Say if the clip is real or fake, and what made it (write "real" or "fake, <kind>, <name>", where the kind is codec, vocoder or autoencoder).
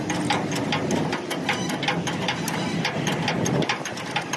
real